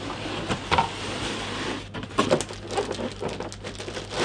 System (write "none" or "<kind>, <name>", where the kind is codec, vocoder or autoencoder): none